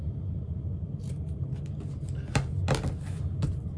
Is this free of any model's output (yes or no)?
yes